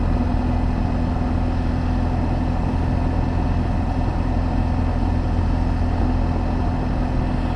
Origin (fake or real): real